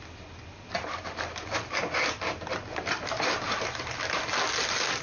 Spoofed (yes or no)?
no